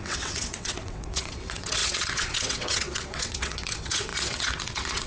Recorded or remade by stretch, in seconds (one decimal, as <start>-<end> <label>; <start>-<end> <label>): 0.0-5.1 remade